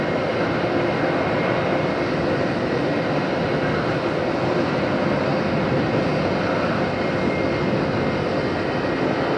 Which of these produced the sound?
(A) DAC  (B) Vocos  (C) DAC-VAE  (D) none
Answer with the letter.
D